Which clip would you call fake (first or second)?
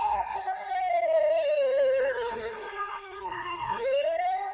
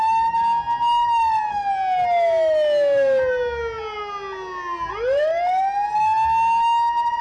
first